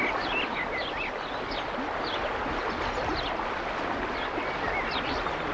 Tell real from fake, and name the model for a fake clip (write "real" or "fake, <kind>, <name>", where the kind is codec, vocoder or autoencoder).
real